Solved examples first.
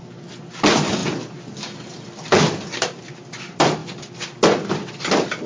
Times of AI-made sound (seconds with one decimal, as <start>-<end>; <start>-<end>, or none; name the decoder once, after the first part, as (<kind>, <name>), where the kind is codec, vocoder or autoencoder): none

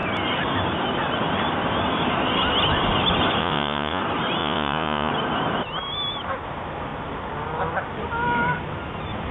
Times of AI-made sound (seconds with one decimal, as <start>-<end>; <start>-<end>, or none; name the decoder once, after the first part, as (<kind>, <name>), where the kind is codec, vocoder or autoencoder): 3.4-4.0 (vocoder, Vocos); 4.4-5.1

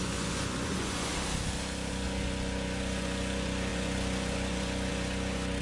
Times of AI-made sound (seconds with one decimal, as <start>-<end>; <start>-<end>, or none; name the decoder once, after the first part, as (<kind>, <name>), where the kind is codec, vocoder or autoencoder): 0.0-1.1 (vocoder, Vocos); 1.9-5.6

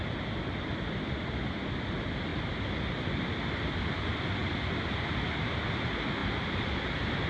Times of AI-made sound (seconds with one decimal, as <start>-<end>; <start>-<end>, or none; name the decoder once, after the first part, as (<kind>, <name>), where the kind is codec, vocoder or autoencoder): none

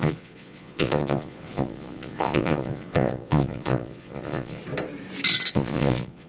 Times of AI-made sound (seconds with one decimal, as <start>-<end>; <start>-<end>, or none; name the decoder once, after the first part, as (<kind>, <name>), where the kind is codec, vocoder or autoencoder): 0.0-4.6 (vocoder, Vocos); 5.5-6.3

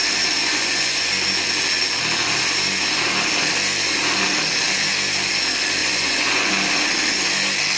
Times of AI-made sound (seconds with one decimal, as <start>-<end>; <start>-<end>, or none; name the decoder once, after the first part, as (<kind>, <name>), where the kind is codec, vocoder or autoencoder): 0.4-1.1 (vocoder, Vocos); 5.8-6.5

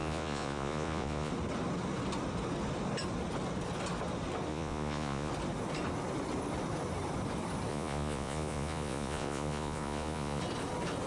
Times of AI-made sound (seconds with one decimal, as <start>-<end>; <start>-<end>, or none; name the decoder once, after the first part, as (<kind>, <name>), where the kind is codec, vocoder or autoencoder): 0.0-1.3 (vocoder, Vocos); 4.5-5.3; 7.7-10.4